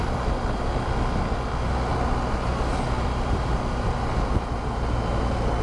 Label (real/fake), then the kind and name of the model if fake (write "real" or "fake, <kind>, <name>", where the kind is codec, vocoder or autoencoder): real